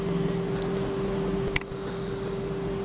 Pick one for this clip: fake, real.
real